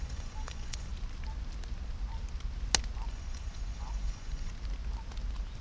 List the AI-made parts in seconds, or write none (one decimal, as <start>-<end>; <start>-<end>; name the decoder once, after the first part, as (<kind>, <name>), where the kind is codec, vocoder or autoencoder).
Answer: 0.0-0.9 (vocoder, Vocos); 3.1-4.5